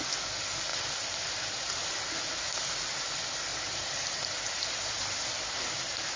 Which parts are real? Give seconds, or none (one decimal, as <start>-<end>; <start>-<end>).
0.0-0.7; 2.3-3.5; 5.5-6.2